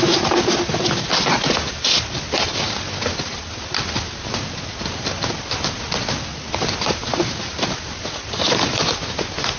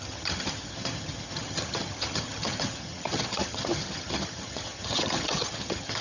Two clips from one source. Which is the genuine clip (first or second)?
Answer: first